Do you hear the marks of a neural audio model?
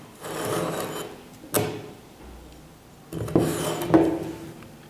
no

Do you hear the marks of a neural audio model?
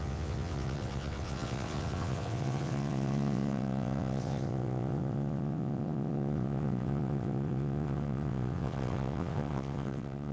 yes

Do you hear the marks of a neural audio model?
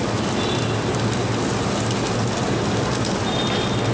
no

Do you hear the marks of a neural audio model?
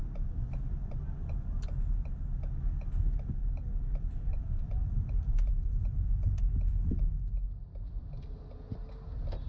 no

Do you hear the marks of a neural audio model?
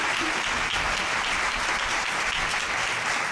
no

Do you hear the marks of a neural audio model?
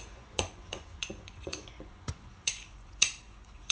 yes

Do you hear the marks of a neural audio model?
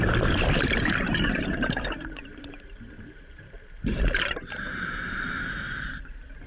yes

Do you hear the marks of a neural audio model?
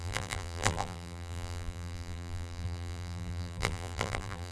yes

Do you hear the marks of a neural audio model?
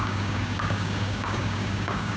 yes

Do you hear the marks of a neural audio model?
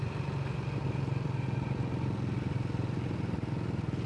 no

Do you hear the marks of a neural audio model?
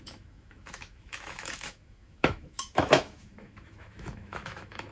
yes